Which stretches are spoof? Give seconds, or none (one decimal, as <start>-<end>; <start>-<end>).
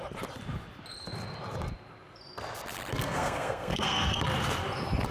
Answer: 2.9-4.2